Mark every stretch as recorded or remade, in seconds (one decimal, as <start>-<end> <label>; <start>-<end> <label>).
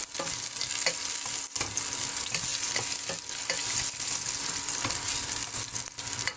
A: 0.0-6.4 recorded